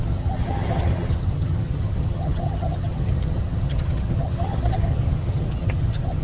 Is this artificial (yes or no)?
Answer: yes